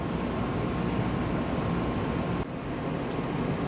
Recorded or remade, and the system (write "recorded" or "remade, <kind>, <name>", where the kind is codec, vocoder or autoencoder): recorded